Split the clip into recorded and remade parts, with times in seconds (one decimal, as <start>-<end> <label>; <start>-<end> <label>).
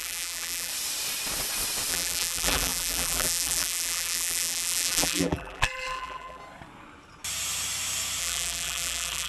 0.0-0.7 remade; 0.7-1.9 recorded; 1.9-6.4 remade; 6.4-8.2 recorded; 8.2-9.3 remade